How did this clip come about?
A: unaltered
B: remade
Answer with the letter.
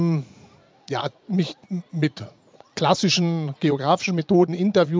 B